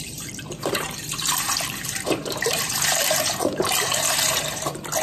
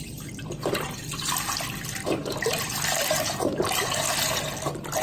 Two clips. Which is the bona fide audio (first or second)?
second